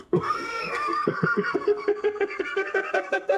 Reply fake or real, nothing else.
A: fake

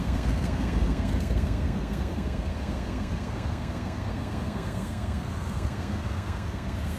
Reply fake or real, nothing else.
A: fake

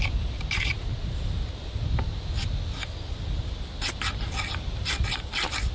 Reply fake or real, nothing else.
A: real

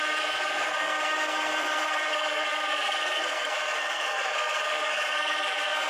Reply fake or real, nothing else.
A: fake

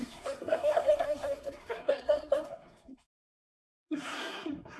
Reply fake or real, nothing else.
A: fake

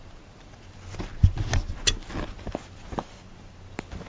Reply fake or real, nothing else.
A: real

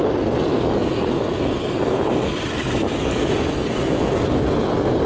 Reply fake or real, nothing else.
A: real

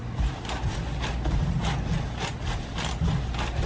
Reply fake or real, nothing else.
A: real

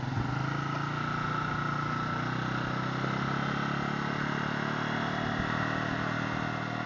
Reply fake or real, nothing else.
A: real